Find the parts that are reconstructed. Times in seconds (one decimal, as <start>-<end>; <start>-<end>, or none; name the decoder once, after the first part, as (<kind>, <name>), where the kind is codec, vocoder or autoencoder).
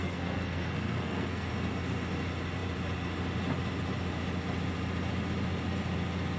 0.0-1.5 (codec, SNAC)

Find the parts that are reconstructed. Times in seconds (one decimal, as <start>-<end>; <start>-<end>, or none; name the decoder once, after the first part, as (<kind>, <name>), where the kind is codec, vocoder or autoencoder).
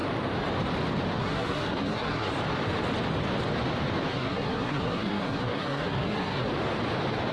1.2-2.3 (codec, SNAC); 4.1-6.5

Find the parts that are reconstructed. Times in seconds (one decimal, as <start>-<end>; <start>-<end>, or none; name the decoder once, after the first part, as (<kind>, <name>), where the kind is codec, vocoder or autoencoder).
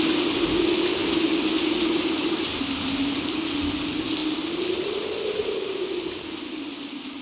none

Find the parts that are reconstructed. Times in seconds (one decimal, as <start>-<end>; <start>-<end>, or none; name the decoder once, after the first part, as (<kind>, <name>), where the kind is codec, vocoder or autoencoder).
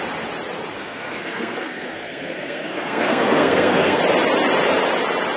0.8-4.0 (codec, SNAC)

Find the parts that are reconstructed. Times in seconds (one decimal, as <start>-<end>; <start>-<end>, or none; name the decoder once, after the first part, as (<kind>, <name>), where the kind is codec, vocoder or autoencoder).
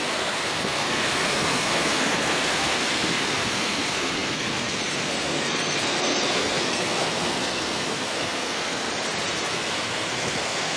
0.0-8.9 (codec, SNAC); 9.5-10.8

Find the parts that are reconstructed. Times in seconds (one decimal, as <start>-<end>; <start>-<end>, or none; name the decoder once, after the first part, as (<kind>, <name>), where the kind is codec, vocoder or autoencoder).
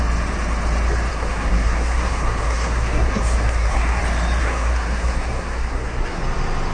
1.1-4.0 (codec, SNAC); 4.4-6.2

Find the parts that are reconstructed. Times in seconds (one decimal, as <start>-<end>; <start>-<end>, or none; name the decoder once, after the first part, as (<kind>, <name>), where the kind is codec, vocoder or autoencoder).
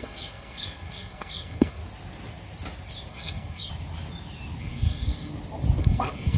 0.0-1.8 (codec, SNAC); 3.1-3.7; 4.6-5.3; 5.8-6.4